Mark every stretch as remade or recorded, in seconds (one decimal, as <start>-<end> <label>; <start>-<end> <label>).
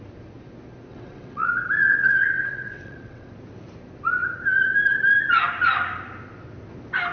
0.0-0.9 recorded; 0.9-1.5 remade; 1.5-1.9 recorded; 1.9-3.3 remade; 3.3-7.1 recorded